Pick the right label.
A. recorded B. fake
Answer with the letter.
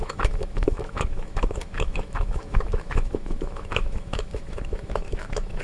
B